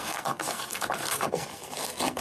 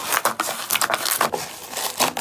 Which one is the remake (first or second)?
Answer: first